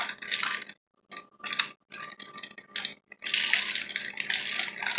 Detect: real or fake real